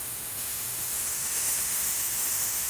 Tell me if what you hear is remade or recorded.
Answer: remade